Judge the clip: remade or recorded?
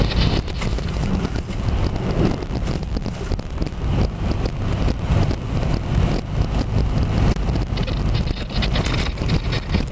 recorded